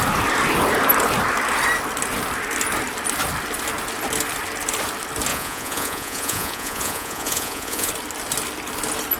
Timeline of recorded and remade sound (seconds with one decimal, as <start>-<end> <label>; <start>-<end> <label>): 0.0-5.3 recorded; 5.3-7.9 remade; 7.9-9.2 recorded